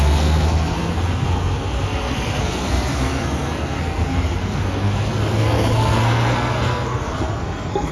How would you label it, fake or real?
fake